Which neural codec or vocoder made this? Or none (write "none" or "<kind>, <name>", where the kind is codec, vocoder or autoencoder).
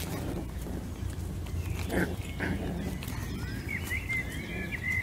none